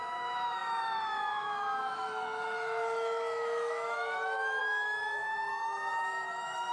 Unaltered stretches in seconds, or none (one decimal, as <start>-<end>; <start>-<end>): none